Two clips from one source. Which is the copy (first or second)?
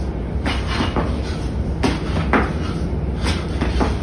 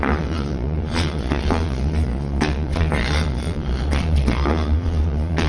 second